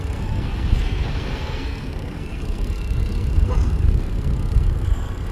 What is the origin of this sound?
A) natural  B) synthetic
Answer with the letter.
B